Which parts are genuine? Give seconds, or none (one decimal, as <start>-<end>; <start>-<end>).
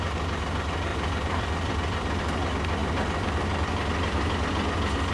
0.0-0.9; 2.2-2.8; 4.5-5.1